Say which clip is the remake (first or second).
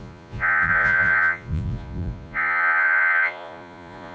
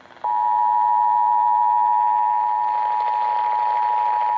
first